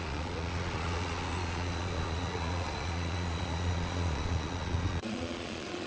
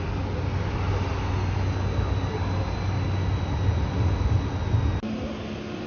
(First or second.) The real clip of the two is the second